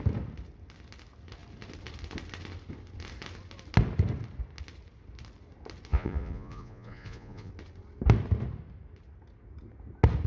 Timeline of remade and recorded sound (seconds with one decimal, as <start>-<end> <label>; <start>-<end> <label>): 0.0-5.9 recorded; 5.9-7.5 remade; 7.5-10.3 recorded